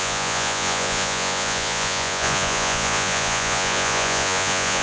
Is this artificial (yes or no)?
yes